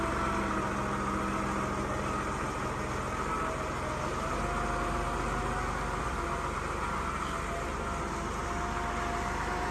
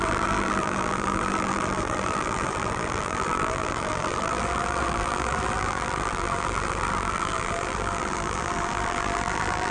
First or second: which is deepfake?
second